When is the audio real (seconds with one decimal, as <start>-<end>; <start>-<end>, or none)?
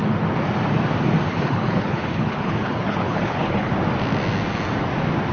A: 0.0-1.3; 3.7-5.3